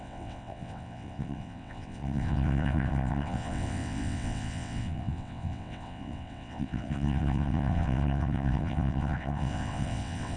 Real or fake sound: fake